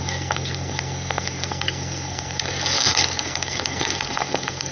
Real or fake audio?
fake